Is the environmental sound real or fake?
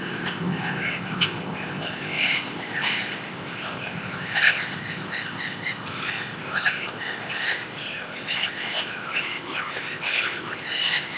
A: fake